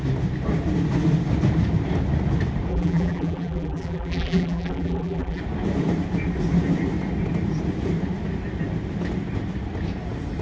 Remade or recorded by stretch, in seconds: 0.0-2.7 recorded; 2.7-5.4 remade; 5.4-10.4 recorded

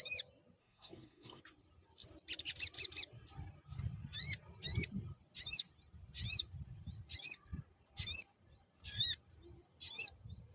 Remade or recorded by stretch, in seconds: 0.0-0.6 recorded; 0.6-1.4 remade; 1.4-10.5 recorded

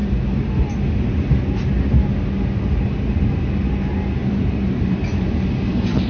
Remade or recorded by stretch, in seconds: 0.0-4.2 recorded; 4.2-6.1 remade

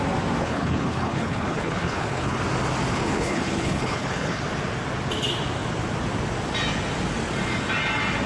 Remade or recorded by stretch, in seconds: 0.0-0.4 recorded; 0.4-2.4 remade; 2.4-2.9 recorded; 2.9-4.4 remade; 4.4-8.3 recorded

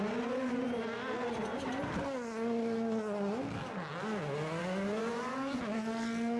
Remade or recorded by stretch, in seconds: 0.0-4.6 recorded; 4.6-5.6 remade; 5.6-6.4 recorded

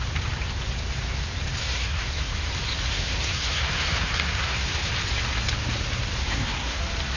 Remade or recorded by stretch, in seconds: 0.0-1.6 recorded; 1.6-2.2 remade; 2.2-2.9 recorded; 2.9-4.9 remade; 4.9-6.2 recorded; 6.2-6.8 remade; 6.8-7.2 recorded

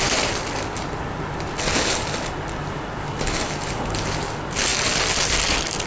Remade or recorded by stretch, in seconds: 0.0-5.9 recorded